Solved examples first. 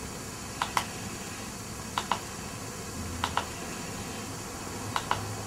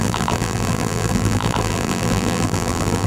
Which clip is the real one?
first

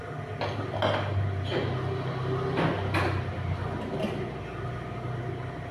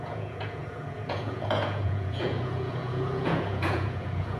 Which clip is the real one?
first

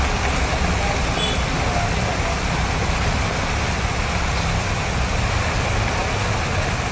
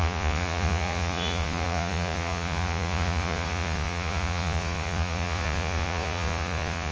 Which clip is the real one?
first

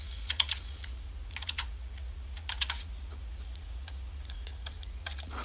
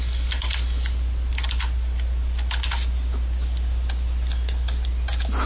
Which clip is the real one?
second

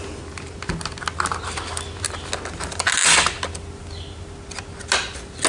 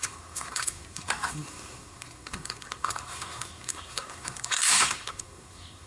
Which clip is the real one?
first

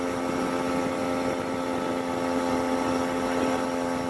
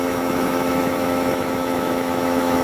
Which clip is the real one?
first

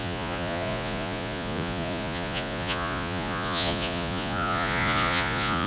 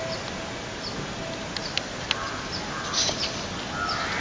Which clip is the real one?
second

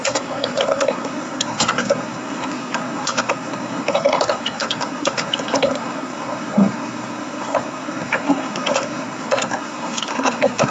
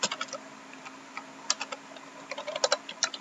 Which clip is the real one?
second